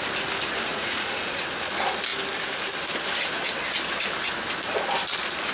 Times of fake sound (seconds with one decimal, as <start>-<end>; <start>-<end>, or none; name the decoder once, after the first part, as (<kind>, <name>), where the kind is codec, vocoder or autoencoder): 0.7-1.4 (vocoder, Vocos)